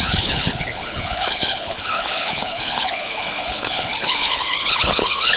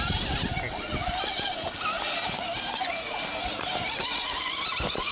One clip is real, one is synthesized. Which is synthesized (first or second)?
first